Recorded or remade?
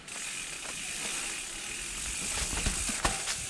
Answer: recorded